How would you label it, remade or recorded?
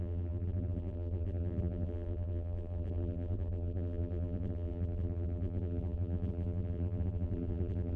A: remade